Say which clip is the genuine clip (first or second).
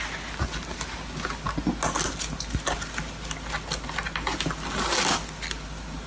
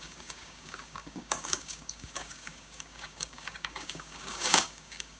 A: first